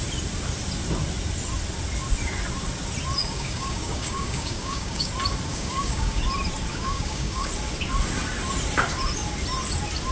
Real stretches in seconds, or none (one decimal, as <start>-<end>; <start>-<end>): 0.0-3.2; 5.1-5.5; 6.2-6.7; 7.5-10.1